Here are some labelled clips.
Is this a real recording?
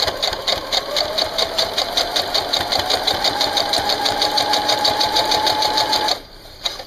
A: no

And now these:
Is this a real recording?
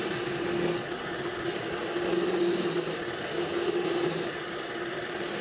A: yes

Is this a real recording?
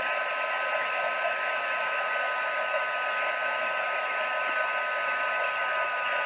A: yes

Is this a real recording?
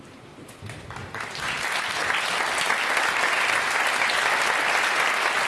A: yes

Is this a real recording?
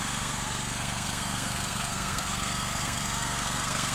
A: no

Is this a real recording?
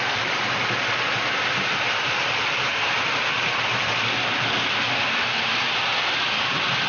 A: yes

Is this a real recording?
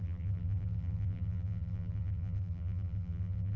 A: no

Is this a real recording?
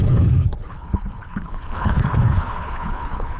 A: no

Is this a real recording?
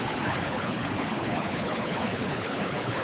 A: no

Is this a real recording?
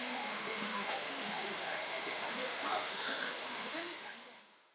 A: no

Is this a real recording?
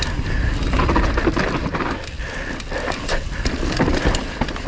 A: yes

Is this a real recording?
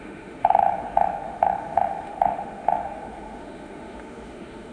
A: no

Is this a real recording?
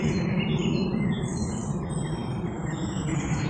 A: yes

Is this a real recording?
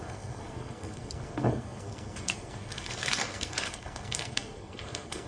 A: no